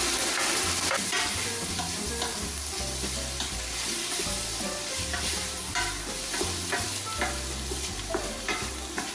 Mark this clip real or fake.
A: fake